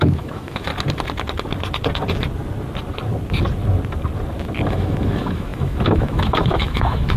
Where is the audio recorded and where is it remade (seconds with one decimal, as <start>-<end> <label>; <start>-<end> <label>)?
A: 0.0-0.7 remade; 0.7-4.7 recorded; 4.7-7.2 remade